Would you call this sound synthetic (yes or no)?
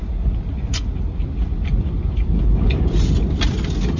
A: no